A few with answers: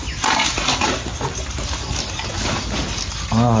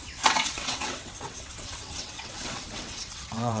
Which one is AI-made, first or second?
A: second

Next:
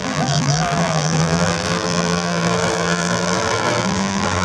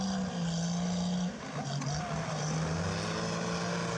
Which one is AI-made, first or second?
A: first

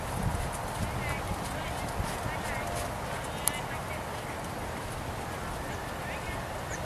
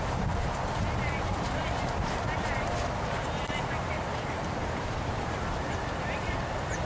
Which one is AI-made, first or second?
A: second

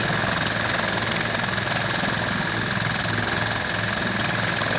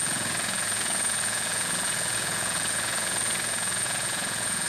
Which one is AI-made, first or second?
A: second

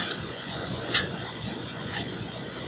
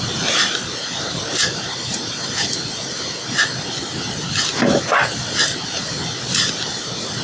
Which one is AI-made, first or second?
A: first